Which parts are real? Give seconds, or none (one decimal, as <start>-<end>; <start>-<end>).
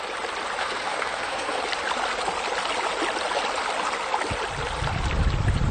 0.0-0.6; 1.6-5.7